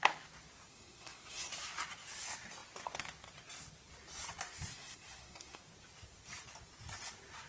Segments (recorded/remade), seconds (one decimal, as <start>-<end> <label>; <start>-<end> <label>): 0.0-0.7 recorded; 0.7-1.5 remade; 1.5-4.7 recorded; 4.7-5.6 remade; 5.6-7.5 recorded